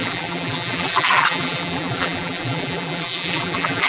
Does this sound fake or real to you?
fake